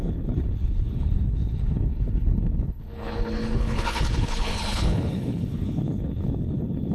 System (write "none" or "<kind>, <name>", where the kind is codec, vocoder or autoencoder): codec, HILCodec